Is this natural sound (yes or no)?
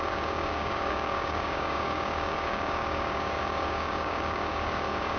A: no